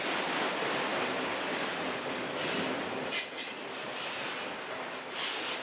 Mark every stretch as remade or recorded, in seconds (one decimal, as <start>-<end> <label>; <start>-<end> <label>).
0.0-5.6 recorded